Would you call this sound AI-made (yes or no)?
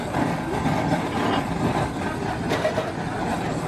no